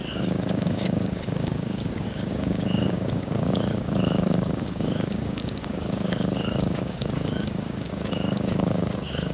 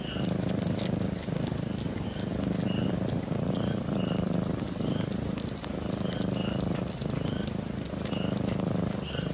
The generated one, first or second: first